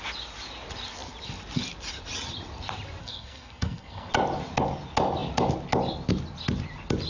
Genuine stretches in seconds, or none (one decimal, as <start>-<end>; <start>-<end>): 0.0-3.0; 4.1-7.1